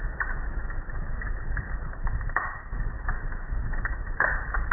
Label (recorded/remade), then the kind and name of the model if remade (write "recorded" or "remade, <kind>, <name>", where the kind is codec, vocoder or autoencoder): remade, autoencoder, DAC-VAE